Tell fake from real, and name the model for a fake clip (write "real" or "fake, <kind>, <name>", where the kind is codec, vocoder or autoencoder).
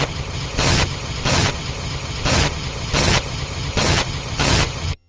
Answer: fake, vocoder, HiFi-GAN